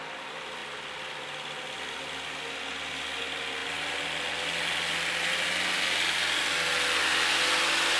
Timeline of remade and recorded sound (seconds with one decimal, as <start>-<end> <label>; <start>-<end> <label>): 0.0-8.0 recorded